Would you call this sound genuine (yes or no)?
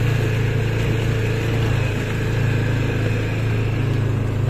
yes